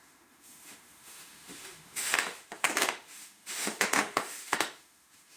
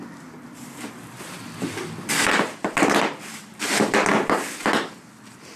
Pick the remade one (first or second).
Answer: first